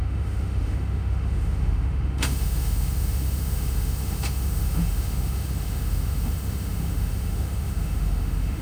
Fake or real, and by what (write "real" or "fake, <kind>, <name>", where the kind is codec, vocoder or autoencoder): fake, autoencoder, DAC-VAE